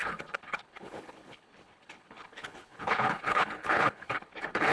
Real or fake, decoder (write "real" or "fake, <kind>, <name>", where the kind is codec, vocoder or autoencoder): fake, codec, HILCodec